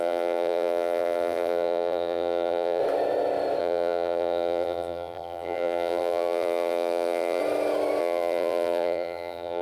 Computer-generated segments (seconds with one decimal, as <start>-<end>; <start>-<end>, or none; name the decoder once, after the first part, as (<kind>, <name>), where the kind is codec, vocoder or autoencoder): 0.0-2.8 (vocoder, BigVGAN v2); 3.6-7.4; 8.0-9.6